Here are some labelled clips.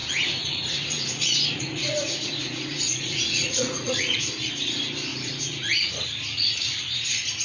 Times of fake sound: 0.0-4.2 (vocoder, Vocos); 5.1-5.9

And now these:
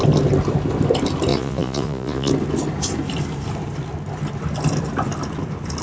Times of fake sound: 1.3-2.3 (vocoder, Vocos)

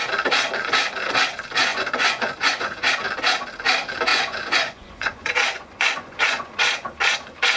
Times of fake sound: 1.7-2.9 (vocoder, Vocos); 4.1-6.5

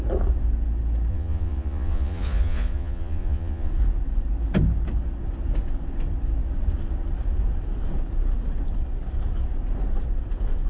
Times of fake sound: 1.1-3.7 (vocoder, Vocos)